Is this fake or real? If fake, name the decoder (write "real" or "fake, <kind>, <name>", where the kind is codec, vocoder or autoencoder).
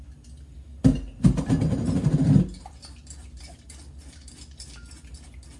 real